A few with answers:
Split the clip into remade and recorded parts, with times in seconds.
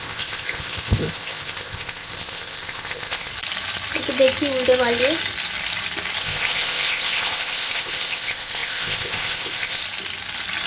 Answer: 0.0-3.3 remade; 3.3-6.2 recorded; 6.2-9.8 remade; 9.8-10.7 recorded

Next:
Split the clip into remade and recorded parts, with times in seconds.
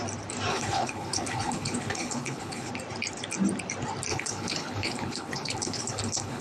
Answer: 0.0-0.5 recorded; 0.5-2.7 remade; 2.7-4.1 recorded; 4.1-6.4 remade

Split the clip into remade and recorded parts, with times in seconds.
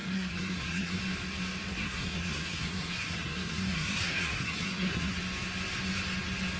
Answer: 0.0-1.0 remade; 1.0-1.7 recorded; 1.7-5.2 remade; 5.2-6.6 recorded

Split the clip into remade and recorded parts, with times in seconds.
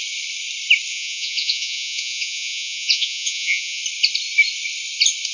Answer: 0.0-0.9 recorded; 0.9-3.8 remade; 3.8-5.3 recorded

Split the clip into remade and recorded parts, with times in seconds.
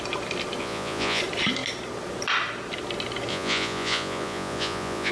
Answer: 0.0-0.6 recorded; 0.6-1.2 remade; 1.2-3.3 recorded; 3.3-5.1 remade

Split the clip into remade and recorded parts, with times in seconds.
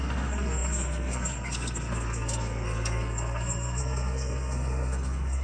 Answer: 0.0-5.4 remade